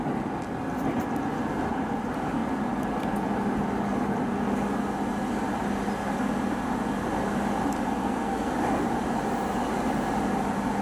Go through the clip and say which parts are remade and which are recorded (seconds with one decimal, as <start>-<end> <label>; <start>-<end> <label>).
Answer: 0.0-8.0 recorded; 8.0-8.5 remade; 8.5-10.8 recorded